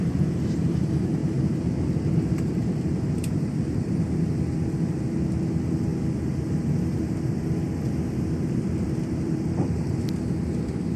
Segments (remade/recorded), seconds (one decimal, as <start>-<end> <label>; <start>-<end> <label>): 0.0-1.2 remade; 1.2-2.3 recorded; 2.3-5.9 remade; 5.9-6.5 recorded; 6.5-11.0 remade